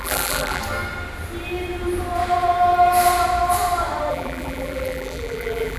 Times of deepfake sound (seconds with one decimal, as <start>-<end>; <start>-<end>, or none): 0.0-0.6; 4.1-5.8